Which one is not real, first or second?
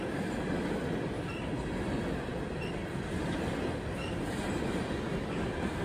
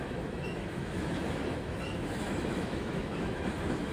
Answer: second